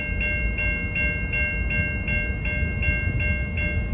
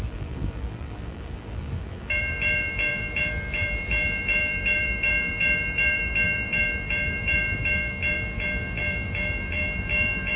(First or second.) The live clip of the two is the first